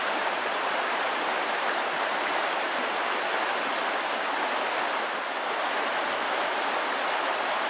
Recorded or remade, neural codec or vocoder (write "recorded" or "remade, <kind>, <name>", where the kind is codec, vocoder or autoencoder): recorded